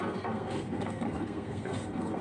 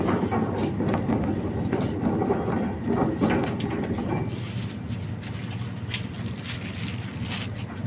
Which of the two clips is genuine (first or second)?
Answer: second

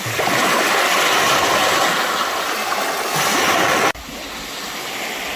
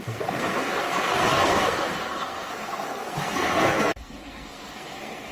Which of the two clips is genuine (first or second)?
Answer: first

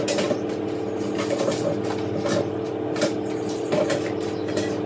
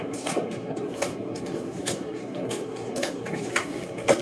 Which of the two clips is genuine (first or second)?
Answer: first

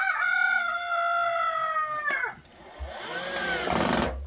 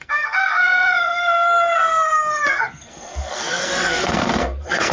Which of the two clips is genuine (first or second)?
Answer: first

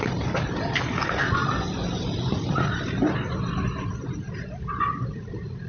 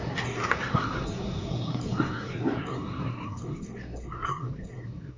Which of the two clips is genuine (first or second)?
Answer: first